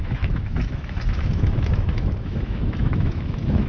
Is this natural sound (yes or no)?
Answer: no